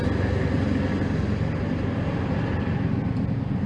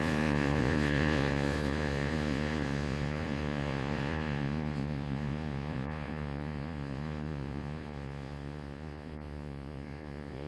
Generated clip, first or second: second